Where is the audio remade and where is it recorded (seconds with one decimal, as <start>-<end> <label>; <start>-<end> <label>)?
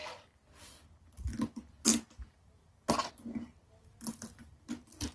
0.0-5.1 recorded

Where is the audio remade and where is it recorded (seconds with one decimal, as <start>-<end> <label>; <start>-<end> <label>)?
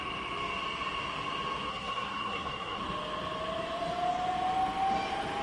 0.0-1.7 recorded; 1.7-2.8 remade; 2.8-5.4 recorded